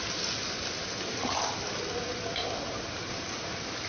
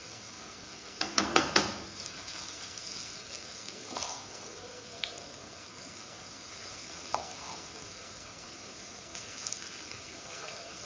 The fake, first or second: second